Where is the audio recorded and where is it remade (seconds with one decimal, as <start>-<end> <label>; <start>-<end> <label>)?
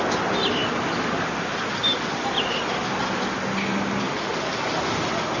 0.0-5.4 recorded